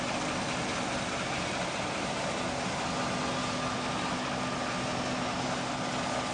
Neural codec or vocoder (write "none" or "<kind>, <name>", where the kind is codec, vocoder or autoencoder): none